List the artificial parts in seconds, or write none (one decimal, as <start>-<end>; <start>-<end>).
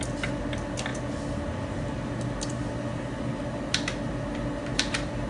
none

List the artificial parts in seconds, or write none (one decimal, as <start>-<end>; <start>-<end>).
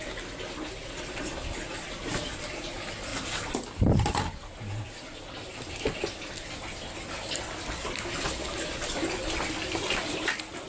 none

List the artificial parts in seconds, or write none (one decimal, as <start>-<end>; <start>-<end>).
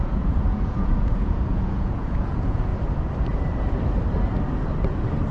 0.0-2.7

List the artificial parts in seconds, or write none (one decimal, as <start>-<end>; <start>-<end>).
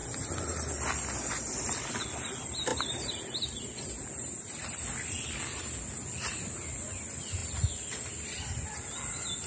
none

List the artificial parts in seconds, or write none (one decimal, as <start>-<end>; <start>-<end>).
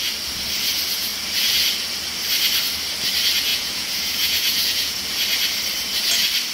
3.5-5.0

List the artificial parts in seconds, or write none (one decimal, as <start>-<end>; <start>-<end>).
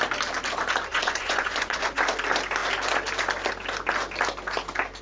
0.9-2.0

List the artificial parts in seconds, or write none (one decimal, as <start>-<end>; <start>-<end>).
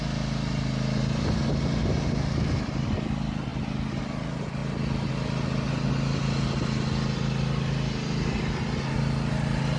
none